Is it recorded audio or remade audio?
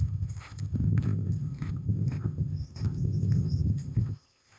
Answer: remade